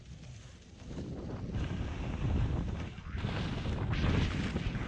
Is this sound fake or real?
real